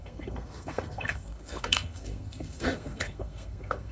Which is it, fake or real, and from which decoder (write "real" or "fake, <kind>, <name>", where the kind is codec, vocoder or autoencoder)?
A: fake, codec, SNAC